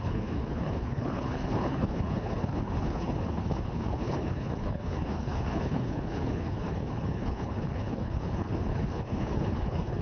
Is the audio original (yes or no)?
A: no